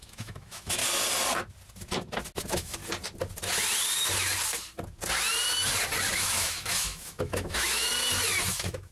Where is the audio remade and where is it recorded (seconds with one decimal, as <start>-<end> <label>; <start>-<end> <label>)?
0.0-0.8 remade; 0.8-2.4 recorded; 2.4-2.8 remade; 2.8-6.1 recorded; 6.1-7.9 remade; 7.9-8.5 recorded; 8.5-8.9 remade